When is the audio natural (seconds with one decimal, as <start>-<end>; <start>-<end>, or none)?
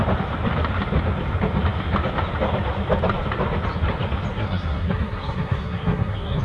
0.0-4.3